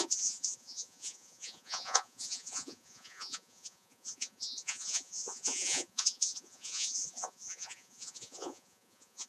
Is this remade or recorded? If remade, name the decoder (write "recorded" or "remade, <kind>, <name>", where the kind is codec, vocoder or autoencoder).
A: remade, vocoder, Vocos